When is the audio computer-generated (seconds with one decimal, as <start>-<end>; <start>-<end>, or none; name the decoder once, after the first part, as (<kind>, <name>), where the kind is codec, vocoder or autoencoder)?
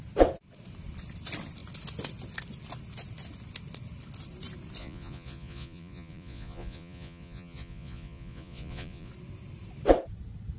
4.8-9.1 (vocoder, Vocos)